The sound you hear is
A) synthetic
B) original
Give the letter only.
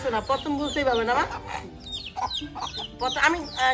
B